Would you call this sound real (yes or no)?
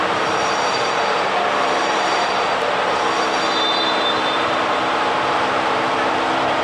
no